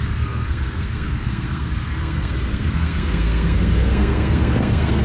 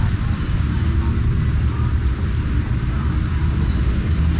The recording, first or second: second